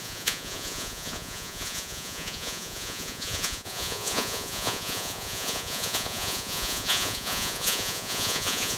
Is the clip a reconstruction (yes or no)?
yes